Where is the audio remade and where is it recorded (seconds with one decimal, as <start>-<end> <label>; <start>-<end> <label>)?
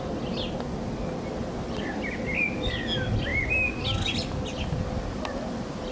0.0-5.9 recorded